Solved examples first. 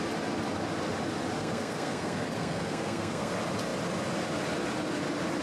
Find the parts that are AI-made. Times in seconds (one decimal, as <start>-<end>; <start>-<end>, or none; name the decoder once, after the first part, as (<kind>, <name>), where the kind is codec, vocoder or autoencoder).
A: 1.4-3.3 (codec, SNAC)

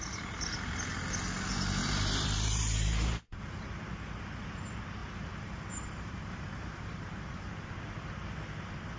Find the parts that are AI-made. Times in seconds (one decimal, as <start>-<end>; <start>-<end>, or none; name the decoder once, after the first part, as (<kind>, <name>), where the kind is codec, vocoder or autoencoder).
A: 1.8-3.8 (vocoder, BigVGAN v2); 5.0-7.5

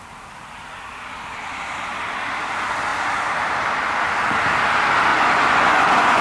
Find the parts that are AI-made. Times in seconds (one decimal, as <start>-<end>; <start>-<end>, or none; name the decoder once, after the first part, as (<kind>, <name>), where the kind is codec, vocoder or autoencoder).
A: 5.1-6.2 (vocoder, Vocos)